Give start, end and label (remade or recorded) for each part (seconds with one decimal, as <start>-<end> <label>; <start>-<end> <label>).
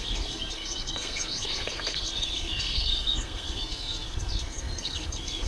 0.0-5.5 remade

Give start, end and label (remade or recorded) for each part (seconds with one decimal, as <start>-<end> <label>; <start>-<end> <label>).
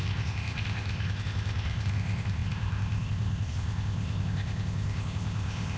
0.0-5.8 remade